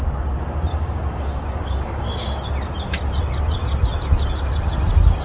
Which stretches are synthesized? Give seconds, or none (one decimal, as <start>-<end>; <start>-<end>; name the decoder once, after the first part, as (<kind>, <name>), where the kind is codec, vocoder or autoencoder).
0.7-2.1 (codec, DAC)